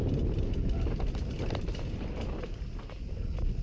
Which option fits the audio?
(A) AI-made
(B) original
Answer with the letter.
B